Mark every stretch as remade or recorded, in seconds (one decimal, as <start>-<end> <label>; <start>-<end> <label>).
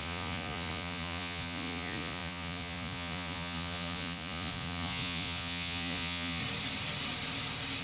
0.0-6.4 remade; 6.4-7.8 recorded